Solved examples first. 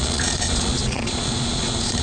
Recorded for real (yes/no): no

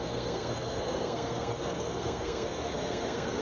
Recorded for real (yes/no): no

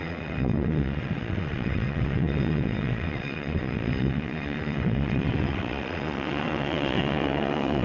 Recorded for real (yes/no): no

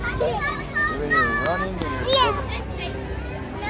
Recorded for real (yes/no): yes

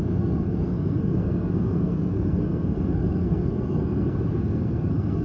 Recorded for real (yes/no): no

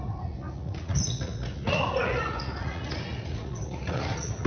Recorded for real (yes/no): no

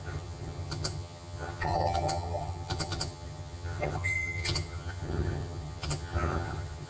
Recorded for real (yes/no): no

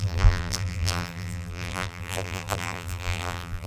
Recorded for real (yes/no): no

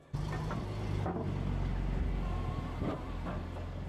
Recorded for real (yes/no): yes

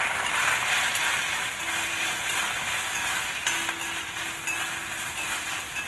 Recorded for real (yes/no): yes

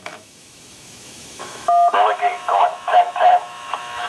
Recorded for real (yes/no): no